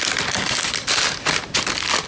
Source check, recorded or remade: recorded